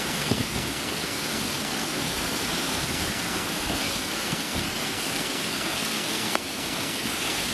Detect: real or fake fake